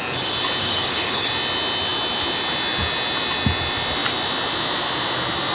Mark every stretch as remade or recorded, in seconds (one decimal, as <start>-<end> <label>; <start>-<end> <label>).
0.0-0.6 recorded; 0.6-1.3 remade; 1.3-5.5 recorded